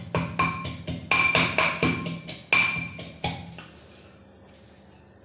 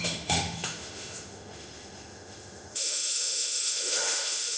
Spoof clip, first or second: second